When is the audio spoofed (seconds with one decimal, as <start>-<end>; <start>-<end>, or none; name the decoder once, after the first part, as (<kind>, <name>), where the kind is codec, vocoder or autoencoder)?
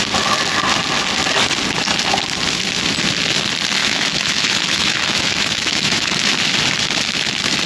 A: 3.8-6.3 (autoencoder, DAC-VAE)